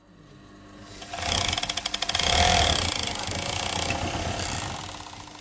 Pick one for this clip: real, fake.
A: real